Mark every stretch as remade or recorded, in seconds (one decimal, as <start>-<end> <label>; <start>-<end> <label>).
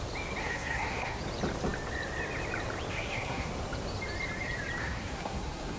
0.0-0.4 recorded; 0.4-1.2 remade; 1.2-2.9 recorded; 2.9-3.5 remade; 3.5-4.8 recorded; 4.8-5.8 remade